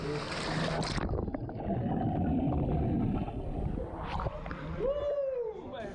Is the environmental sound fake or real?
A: real